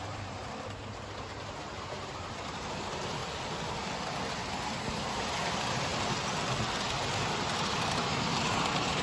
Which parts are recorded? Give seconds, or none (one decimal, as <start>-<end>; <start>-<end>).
0.4-1.1; 3.2-4.9; 5.9-7.0